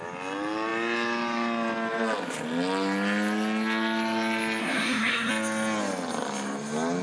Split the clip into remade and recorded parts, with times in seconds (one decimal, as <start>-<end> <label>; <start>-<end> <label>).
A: 0.0-4.6 recorded; 4.6-5.3 remade; 5.3-7.0 recorded